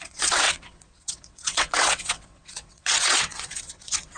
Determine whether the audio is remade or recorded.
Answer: remade